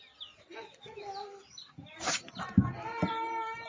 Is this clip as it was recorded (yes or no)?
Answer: no